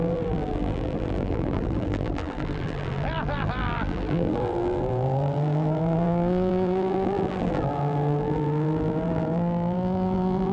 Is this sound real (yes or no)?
no